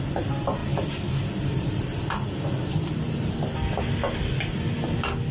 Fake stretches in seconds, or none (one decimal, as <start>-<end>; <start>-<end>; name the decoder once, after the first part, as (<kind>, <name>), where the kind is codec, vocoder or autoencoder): none